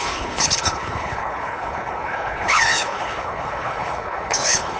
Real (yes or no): no